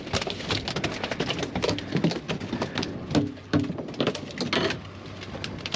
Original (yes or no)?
yes